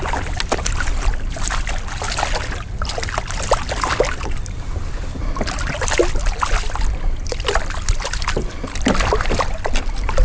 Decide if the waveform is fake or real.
real